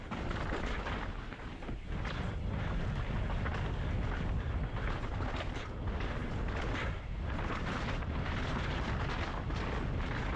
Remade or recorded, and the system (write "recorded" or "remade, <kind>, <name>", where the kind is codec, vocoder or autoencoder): recorded